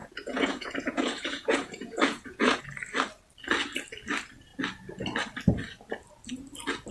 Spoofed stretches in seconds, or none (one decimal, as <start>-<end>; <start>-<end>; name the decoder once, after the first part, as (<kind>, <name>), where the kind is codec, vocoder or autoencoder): 0.0-2.6 (vocoder, Vocos)